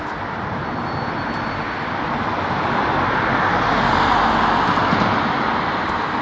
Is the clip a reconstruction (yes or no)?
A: no